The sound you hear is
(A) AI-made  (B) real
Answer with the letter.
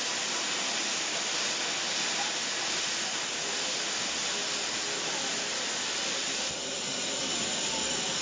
B